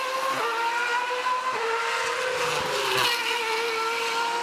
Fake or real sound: real